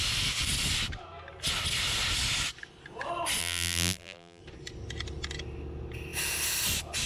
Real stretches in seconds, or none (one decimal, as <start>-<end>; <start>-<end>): 0.0-3.4; 4.4-7.1